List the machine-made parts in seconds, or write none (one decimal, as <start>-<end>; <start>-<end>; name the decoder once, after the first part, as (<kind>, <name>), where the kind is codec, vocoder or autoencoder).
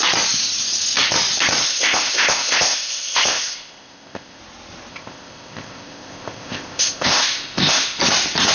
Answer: 1.6-4.4 (codec, ZipCodec); 4.9-8.0